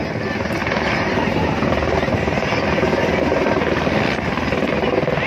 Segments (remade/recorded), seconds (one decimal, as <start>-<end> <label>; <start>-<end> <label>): 0.0-0.6 recorded; 0.6-3.2 remade; 3.2-5.3 recorded